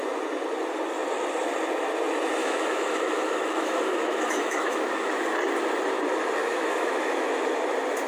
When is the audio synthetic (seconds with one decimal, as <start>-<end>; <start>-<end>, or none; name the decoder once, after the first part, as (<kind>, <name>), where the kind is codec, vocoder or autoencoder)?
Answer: 2.4-5.1 (autoencoder, DAC-VAE); 6.4-7.3